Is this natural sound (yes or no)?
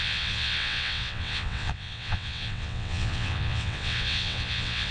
no